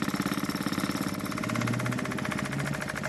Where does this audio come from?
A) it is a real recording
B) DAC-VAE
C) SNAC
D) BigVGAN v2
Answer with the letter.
A